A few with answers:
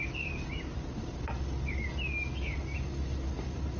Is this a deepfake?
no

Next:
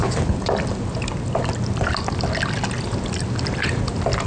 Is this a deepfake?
no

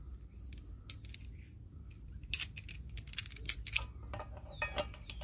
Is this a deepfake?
no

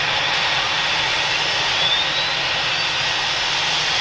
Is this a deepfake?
no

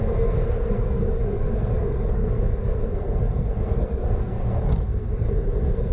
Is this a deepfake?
yes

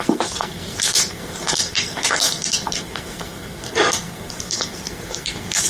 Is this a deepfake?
yes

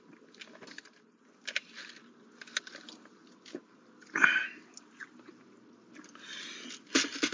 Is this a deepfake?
no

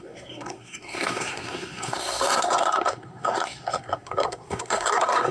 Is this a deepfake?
yes